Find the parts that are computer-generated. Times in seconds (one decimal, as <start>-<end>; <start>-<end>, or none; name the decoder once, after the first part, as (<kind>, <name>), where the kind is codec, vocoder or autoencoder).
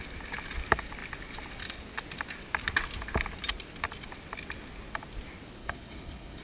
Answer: 5.6-6.4 (codec, HILCodec)